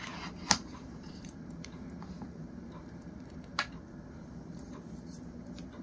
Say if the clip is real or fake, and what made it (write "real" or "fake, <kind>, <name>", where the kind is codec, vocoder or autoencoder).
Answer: fake, vocoder, BigVGAN v2